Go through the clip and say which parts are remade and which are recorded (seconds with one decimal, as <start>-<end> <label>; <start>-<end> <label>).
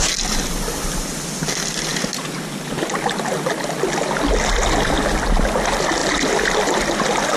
0.0-7.4 recorded